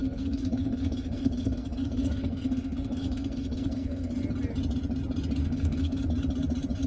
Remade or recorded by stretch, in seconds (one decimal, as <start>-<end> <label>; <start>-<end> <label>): 0.0-4.1 remade; 4.1-5.4 recorded; 5.4-6.0 remade; 6.0-6.9 recorded